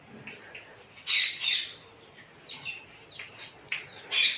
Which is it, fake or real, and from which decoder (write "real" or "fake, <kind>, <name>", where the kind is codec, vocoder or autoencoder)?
real